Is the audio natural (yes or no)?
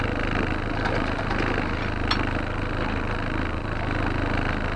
yes